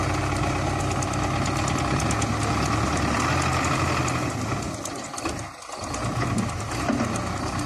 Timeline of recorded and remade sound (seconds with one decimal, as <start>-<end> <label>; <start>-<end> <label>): 0.0-7.7 recorded